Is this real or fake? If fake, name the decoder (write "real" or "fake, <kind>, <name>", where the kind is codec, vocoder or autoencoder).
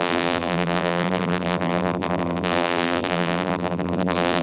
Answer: fake, vocoder, BigVGAN v2